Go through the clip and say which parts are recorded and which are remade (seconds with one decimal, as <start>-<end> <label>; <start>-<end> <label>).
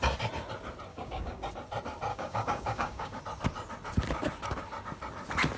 0.0-0.9 recorded; 0.9-1.5 remade; 1.5-2.1 recorded; 2.1-3.2 remade; 3.2-5.6 recorded